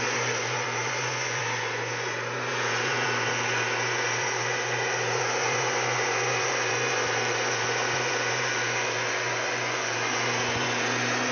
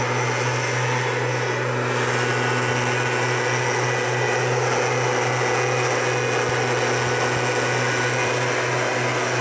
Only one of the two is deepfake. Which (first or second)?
first